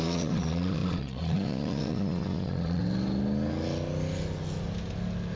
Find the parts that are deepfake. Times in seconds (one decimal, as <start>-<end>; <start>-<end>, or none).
0.0-2.8